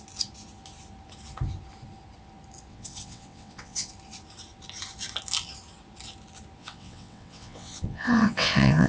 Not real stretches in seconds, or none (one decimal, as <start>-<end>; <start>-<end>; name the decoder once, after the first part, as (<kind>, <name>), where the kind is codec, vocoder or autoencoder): 2.7-3.9 (vocoder, WaveNeXt); 6.6-8.9